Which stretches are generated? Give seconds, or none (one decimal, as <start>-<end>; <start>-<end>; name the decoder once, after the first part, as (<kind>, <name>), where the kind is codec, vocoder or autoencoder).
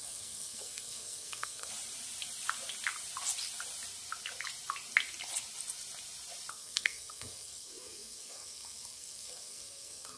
0.0-1.7 (codec, SNAC); 6.5-10.2